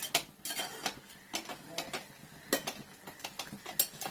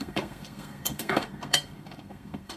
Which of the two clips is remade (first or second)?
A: second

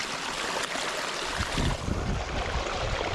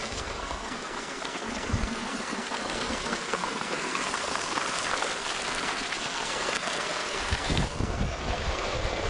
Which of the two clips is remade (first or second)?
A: second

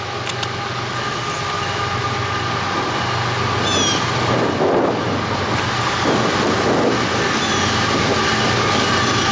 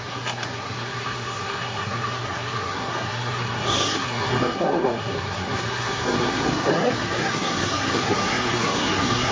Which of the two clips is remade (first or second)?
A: second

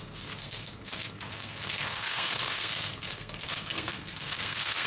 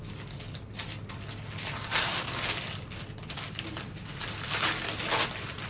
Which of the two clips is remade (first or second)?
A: first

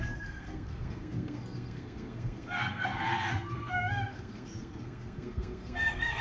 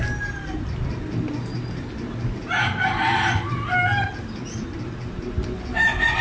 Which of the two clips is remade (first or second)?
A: first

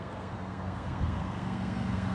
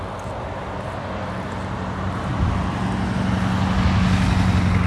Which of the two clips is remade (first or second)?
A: first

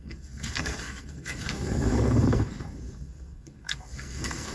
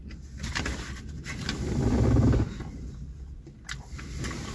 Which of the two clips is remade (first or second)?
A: first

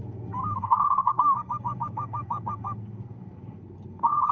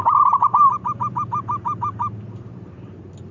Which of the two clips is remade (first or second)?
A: first